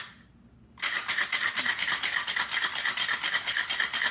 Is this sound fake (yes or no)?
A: no